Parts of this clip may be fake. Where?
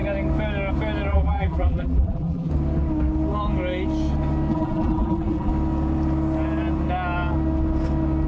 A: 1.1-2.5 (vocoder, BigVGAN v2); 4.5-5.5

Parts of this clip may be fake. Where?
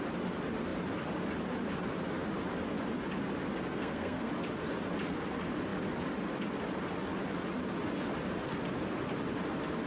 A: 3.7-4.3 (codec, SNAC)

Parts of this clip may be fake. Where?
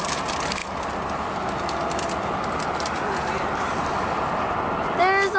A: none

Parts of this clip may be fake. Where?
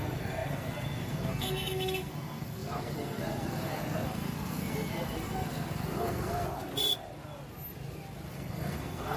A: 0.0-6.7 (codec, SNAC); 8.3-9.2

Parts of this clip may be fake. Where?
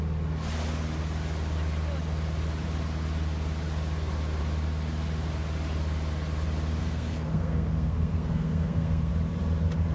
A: 6.8-9.1 (codec, SNAC)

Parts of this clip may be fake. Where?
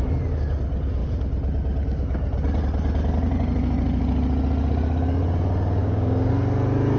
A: 5.8-6.3 (codec, DAC)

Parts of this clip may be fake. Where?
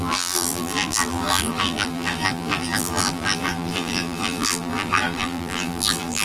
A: 0.0-6.2 (vocoder, BigVGAN v2)